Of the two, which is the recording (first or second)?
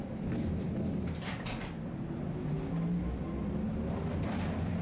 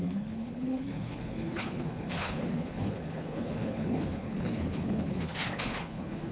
first